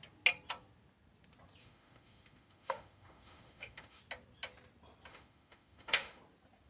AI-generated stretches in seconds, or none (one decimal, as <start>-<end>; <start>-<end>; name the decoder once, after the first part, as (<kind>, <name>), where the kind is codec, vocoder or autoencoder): 1.6-4.0 (autoencoder, DAC-VAE); 5.1-6.2